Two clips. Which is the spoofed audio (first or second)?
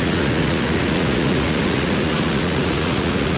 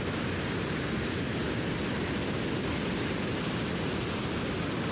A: first